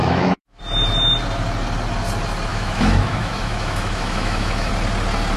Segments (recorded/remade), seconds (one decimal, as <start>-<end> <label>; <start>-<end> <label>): 0.0-0.6 remade; 0.6-2.5 recorded; 2.5-4.7 remade; 4.7-5.4 recorded